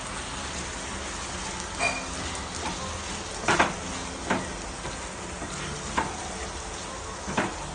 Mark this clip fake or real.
real